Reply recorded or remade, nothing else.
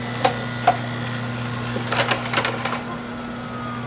recorded